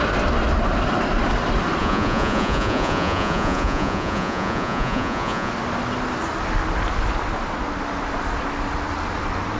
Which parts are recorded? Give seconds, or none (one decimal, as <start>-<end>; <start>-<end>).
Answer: 0.0-1.8; 5.5-9.6